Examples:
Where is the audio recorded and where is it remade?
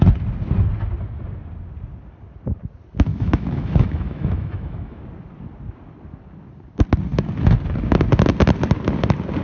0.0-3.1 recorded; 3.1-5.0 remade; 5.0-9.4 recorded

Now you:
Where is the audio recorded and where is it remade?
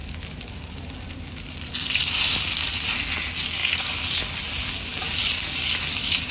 0.0-6.3 recorded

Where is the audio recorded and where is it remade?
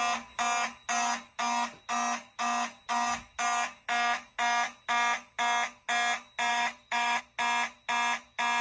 0.0-6.5 recorded; 6.5-7.2 remade; 7.2-8.6 recorded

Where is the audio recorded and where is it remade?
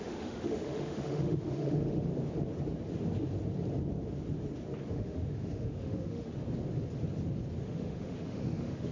0.0-2.1 remade; 2.1-4.9 recorded; 4.9-6.3 remade; 6.3-7.6 recorded; 7.6-8.9 remade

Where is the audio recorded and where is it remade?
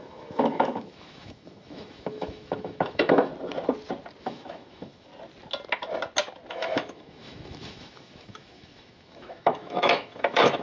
0.0-3.3 remade; 3.3-4.2 recorded; 4.2-5.1 remade; 5.1-6.5 recorded; 6.5-10.6 remade